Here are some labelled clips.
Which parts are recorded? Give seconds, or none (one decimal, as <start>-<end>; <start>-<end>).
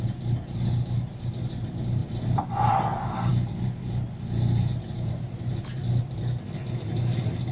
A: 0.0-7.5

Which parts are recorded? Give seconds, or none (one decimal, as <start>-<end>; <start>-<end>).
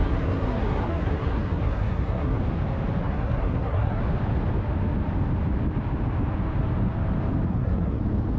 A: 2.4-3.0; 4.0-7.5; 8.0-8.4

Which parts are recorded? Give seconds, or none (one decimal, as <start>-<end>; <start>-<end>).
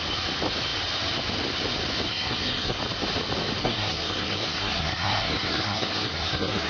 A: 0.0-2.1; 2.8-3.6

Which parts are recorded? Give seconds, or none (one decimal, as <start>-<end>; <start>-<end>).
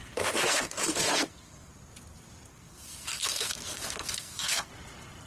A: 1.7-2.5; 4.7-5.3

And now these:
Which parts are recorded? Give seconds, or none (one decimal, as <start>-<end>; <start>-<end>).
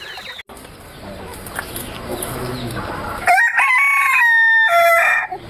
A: 0.0-5.5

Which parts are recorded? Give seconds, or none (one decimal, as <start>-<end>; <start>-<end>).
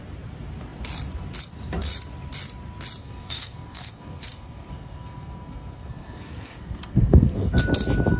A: 0.0-3.0; 7.6-8.2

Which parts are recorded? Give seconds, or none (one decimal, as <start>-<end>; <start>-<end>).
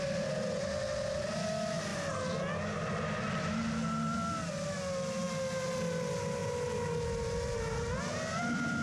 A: 0.0-8.8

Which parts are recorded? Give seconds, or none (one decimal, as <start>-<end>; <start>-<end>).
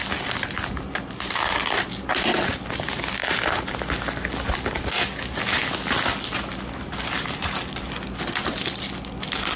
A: 0.0-9.6